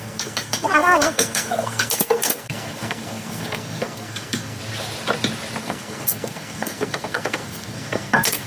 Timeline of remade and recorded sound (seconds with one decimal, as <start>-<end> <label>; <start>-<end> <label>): 0.0-4.6 remade; 4.6-5.6 recorded; 5.6-8.5 remade